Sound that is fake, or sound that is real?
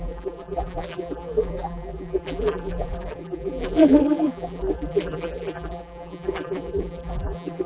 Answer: fake